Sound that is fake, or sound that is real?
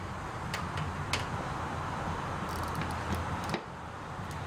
real